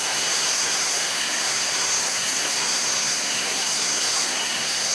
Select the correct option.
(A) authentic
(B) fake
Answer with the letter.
B